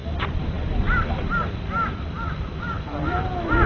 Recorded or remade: recorded